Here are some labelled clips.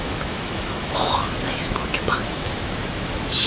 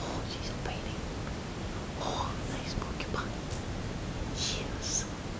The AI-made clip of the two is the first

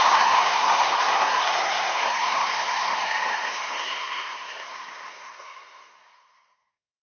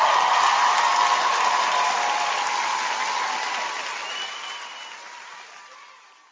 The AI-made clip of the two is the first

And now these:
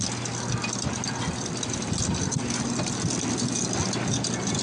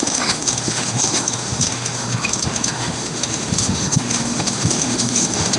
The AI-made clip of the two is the second